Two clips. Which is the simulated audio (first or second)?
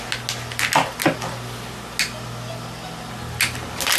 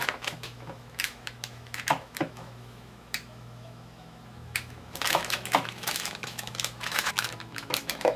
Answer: second